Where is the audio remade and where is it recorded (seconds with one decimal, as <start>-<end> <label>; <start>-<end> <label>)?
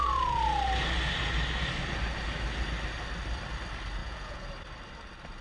0.0-4.0 recorded; 4.0-4.5 remade; 4.5-5.4 recorded